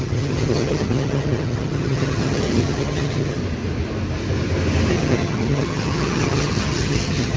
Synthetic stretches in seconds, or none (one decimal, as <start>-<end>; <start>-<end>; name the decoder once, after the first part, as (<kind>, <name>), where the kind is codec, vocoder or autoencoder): 0.0-3.4 (vocoder, HiFi-GAN); 4.9-7.4